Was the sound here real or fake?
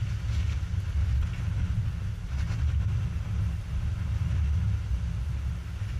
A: real